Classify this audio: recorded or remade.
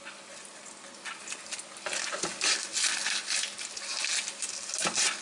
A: recorded